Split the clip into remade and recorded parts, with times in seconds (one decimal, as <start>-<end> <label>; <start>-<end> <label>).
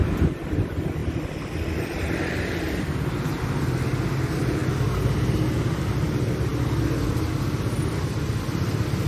0.0-9.1 recorded